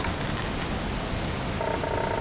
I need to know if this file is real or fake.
real